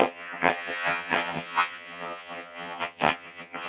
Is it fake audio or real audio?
fake